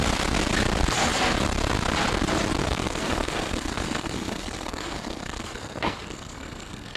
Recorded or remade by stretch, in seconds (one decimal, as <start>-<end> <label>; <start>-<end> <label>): 0.0-2.6 recorded; 2.6-7.0 remade